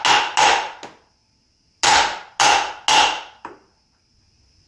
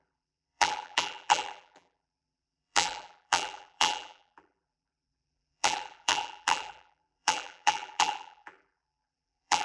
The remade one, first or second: second